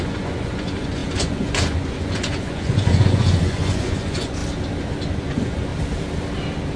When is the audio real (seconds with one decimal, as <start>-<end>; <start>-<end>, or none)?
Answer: 4.4-5.1; 5.7-6.8